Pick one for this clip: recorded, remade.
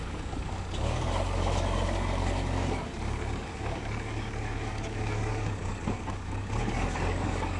remade